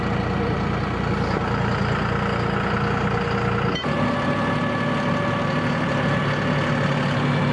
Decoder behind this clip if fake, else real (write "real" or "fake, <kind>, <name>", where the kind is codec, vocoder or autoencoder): real